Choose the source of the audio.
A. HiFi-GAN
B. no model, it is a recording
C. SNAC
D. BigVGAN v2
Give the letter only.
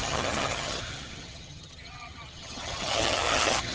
A